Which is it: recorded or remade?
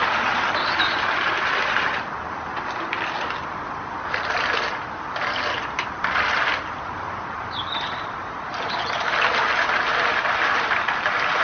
recorded